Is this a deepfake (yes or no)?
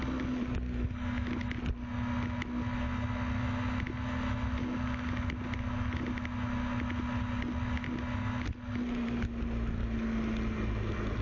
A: no